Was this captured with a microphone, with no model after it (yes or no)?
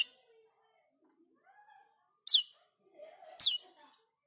yes